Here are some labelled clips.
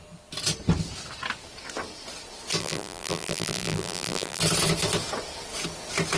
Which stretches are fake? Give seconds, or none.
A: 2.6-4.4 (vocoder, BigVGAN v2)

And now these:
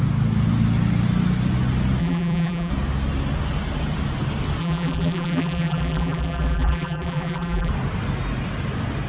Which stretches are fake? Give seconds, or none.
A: 2.0-2.7 (vocoder, BigVGAN v2); 4.6-7.7

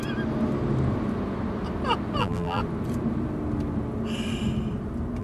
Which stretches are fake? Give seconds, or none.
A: 2.2-2.6 (vocoder, BigVGAN v2)

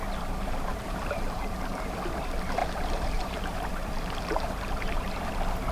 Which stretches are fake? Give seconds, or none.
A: 0.7-2.2 (vocoder, BigVGAN v2); 2.6-5.3

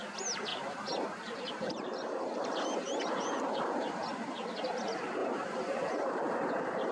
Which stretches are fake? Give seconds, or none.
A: 0.5-4.1 (vocoder, BigVGAN v2); 5.2-6.3

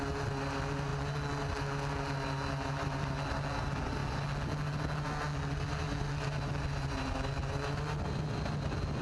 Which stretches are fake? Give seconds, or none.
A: none